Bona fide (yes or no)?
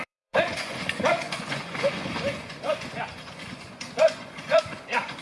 no